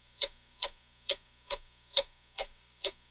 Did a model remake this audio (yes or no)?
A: yes